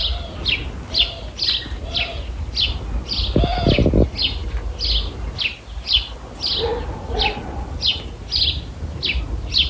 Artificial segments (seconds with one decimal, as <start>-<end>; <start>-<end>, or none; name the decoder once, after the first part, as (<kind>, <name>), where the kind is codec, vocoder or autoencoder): none